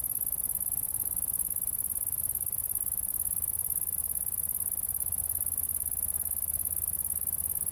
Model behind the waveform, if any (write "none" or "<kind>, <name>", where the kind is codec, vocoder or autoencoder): none